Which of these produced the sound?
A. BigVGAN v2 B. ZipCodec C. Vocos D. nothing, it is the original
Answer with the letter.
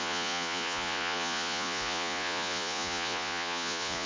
C